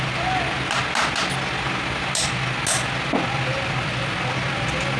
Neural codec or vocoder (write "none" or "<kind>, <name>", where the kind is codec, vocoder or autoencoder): none